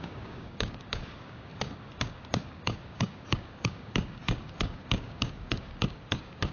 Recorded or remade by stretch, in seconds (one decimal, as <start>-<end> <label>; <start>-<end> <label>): 0.0-6.5 remade

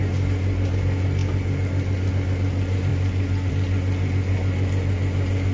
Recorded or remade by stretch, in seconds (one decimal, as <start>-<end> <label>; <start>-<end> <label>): 0.0-5.5 recorded

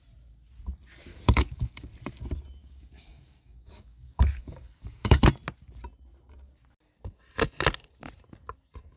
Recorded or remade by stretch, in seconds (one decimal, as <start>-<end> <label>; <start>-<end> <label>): 0.0-1.1 recorded; 1.1-1.9 remade; 1.9-2.6 recorded; 2.6-5.2 remade; 5.2-9.0 recorded